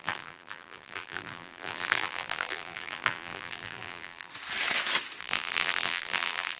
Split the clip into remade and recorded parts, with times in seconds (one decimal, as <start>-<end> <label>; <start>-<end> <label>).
0.0-4.3 remade; 4.3-5.2 recorded; 5.2-6.6 remade